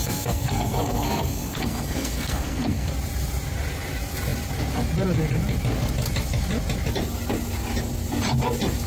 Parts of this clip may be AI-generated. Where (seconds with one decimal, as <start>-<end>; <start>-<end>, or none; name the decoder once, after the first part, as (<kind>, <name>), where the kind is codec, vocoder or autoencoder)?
0.0-2.9 (codec, SNAC)